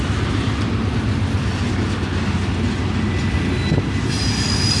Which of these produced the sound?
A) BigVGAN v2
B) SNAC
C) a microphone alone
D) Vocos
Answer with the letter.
C